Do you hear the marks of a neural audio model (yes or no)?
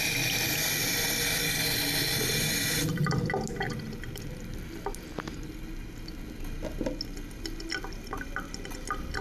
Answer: no